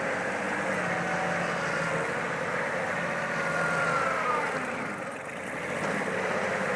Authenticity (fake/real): real